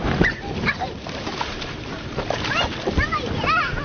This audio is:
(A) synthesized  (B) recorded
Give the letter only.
A